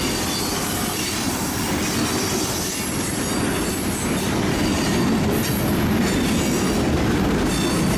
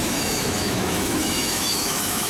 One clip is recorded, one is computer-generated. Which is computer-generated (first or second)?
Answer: second